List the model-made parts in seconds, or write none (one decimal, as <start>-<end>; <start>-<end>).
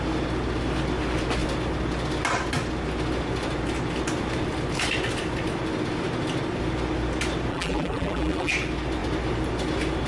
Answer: 7.5-8.5